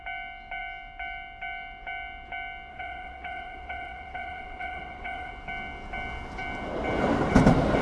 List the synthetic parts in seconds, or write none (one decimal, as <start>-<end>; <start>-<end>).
2.7-5.3